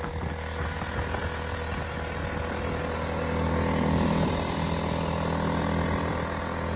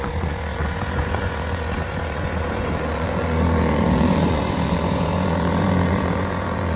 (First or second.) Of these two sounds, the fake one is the second